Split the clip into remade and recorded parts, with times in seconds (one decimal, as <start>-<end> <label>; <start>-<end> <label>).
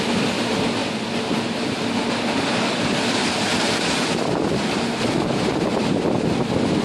0.0-3.2 recorded; 3.2-4.6 remade; 4.6-5.2 recorded; 5.2-5.8 remade; 5.8-6.8 recorded